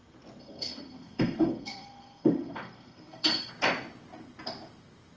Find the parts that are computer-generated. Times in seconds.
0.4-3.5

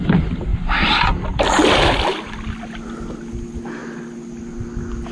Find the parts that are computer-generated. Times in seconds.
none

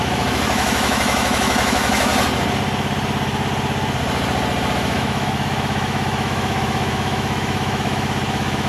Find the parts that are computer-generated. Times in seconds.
0.0-2.1; 4.7-8.7

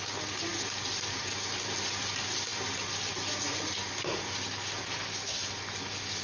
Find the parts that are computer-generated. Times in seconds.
none

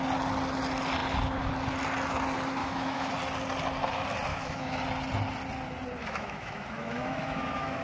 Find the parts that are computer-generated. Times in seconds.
2.6-3.1; 4.3-4.8; 6.0-7.8

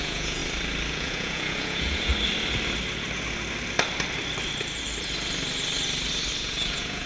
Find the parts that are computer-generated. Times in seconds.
0.0-0.4; 0.9-2.1; 6.4-7.1

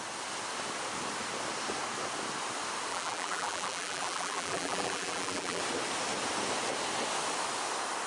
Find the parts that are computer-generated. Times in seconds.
2.9-5.6